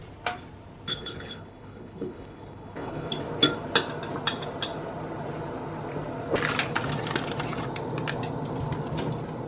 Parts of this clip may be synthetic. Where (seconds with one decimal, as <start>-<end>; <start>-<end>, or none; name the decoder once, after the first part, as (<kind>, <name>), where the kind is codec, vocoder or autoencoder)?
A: 0.9-3.1 (codec, HILCodec)